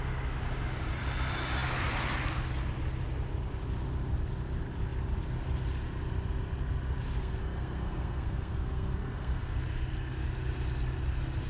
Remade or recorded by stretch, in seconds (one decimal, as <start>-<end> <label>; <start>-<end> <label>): 0.0-7.2 recorded; 7.2-9.6 remade; 9.6-11.5 recorded